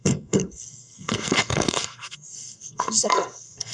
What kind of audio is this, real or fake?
fake